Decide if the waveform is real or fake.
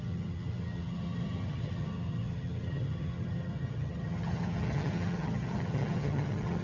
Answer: fake